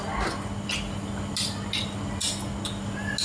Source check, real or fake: real